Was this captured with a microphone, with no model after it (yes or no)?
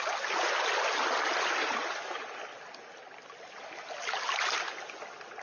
yes